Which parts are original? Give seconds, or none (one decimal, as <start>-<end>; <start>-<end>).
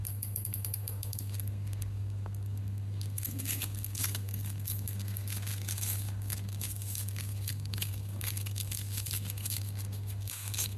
none